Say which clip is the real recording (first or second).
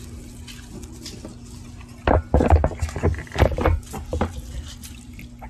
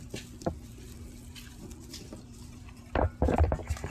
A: first